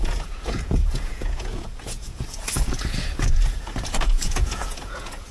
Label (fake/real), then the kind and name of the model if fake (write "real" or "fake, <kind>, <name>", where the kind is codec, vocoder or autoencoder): fake, vocoder, Vocos